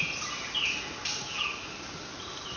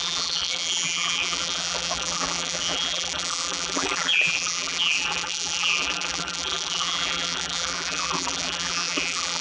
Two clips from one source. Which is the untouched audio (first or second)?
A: first